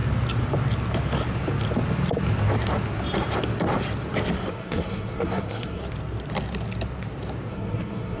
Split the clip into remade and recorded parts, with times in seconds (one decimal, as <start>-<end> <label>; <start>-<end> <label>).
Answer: 0.0-4.5 recorded; 4.5-5.8 remade; 5.8-7.5 recorded; 7.5-8.2 remade